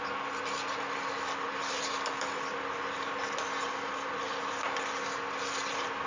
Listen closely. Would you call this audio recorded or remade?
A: recorded